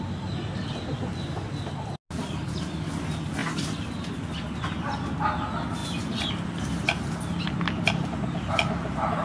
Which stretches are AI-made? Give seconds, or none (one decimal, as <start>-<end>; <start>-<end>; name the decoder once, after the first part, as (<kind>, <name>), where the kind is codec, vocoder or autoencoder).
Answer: none